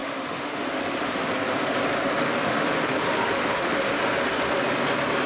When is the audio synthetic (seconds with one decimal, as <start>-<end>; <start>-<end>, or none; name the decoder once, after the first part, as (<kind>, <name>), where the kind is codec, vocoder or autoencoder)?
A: 0.0-1.3 (autoencoder, DAC-VAE); 2.2-4.0